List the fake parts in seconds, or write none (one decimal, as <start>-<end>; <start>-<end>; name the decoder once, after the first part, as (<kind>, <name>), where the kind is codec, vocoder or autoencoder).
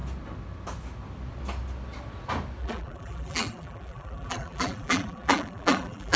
2.6-6.2 (vocoder, BigVGAN v2)